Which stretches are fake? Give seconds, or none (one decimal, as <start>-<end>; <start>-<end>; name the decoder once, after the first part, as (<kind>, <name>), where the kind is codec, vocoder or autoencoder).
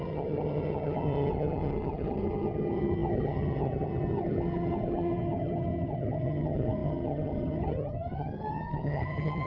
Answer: 0.0-9.5 (vocoder, HiFi-GAN)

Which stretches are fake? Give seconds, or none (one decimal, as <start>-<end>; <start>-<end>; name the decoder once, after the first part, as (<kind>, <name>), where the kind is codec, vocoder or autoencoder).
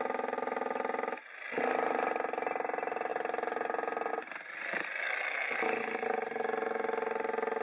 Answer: none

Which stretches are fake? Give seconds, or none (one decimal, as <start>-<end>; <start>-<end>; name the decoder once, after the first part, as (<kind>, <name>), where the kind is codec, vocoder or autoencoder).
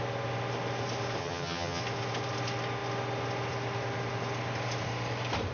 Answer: 1.2-1.8 (vocoder, HiFi-GAN)